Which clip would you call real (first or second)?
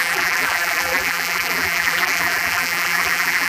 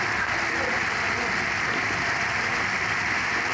second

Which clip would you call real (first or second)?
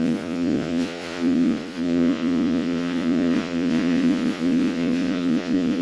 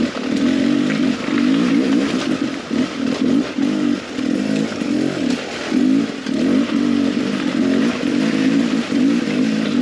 second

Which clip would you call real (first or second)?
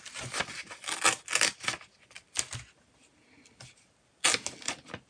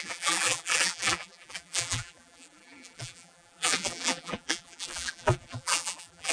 first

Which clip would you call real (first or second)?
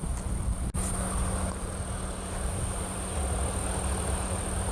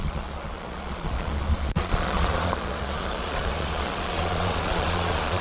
first